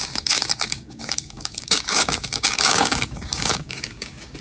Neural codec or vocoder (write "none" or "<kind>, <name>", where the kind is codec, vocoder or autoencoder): codec, DAC